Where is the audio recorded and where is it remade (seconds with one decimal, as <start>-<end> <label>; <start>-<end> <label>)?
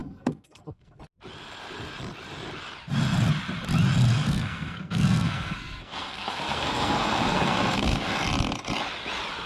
0.0-1.0 remade; 1.0-4.1 recorded; 4.1-8.1 remade; 8.1-9.5 recorded